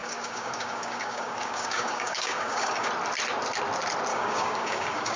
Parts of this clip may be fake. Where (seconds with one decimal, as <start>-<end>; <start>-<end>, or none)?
0.0-2.9; 4.1-5.2